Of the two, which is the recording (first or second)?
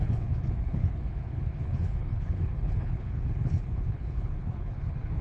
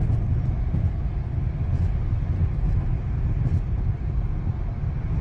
second